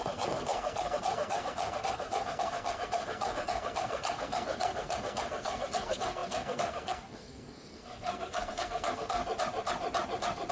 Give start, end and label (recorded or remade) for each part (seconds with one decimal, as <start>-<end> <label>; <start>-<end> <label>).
0.0-9.2 remade; 9.2-10.5 recorded